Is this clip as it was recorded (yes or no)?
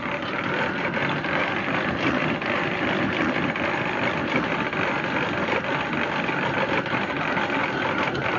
yes